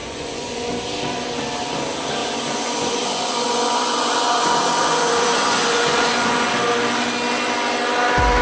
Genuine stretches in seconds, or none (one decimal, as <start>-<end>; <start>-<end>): 0.7-2.2; 6.5-8.4